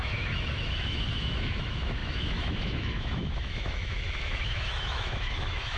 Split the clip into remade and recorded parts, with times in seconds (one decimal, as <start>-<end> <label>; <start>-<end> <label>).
0.0-5.8 remade